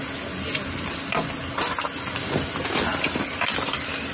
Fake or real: real